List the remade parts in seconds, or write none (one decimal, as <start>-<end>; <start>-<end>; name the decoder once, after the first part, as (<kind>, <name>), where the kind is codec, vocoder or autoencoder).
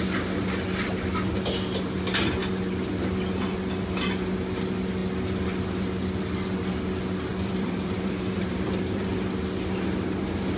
7.3-9.1 (vocoder, BigVGAN v2)